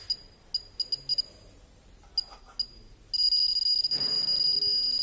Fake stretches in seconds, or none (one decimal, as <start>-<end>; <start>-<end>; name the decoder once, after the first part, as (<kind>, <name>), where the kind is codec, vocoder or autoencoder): none